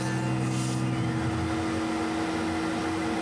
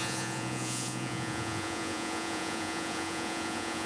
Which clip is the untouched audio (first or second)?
first